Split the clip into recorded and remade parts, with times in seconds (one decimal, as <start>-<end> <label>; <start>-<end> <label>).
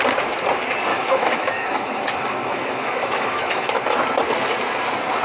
0.0-0.9 recorded; 0.9-4.0 remade; 4.0-5.2 recorded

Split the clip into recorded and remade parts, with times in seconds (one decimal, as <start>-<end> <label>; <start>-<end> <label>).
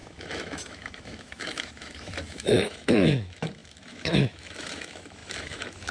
0.0-5.9 remade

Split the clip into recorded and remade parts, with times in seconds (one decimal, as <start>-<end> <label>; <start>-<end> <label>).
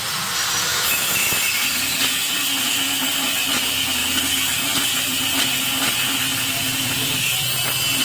0.0-0.7 recorded; 0.7-1.3 remade; 1.3-8.0 recorded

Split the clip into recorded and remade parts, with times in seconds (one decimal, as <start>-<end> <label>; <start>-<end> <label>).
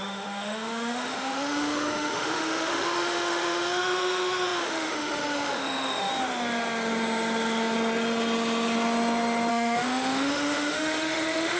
0.0-6.1 remade; 6.1-9.5 recorded; 9.5-11.6 remade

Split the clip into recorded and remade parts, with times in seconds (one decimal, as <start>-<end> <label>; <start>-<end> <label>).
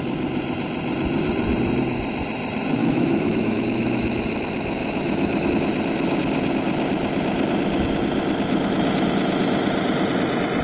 0.0-2.8 recorded; 2.8-3.8 remade; 3.8-4.8 recorded; 4.8-5.5 remade; 5.5-10.6 recorded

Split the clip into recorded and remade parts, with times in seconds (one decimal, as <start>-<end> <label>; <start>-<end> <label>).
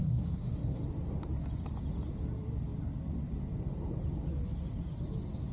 0.0-0.8 remade; 0.8-5.5 recorded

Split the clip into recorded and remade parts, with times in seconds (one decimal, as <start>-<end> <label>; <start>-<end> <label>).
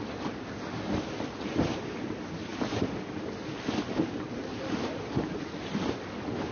0.0-6.5 recorded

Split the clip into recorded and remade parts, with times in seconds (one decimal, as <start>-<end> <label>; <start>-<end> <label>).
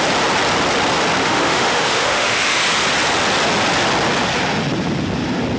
0.0-1.2 recorded; 1.2-2.6 remade; 2.6-5.6 recorded